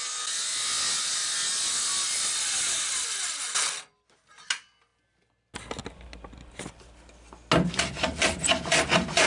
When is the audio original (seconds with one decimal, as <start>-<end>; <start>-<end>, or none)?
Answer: 0.0-9.3